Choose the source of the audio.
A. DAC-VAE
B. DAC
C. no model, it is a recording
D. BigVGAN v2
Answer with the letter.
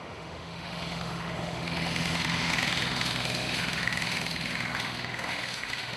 A